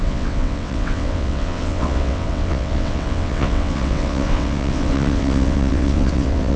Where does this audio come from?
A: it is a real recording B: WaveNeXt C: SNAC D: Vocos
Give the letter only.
B